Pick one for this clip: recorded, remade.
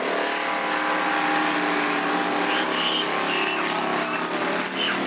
recorded